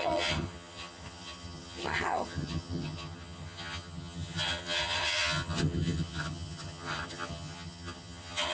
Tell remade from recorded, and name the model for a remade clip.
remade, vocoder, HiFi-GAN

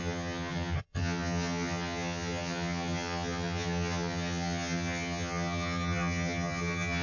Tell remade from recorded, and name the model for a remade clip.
remade, vocoder, HiFi-GAN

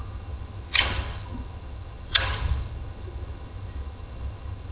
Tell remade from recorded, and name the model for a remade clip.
remade, vocoder, HiFi-GAN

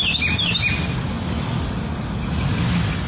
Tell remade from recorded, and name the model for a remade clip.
recorded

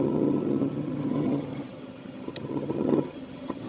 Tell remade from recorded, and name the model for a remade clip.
remade, vocoder, HiFi-GAN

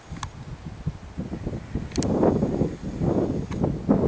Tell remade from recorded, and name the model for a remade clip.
recorded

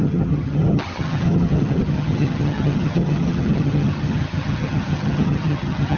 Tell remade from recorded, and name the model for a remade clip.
remade, vocoder, HiFi-GAN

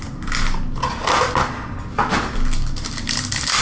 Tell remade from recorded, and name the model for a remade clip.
recorded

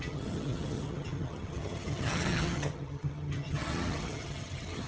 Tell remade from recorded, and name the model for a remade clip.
remade, vocoder, HiFi-GAN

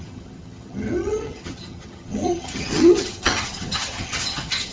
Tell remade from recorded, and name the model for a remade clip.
remade, vocoder, HiFi-GAN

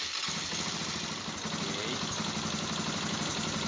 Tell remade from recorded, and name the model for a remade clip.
recorded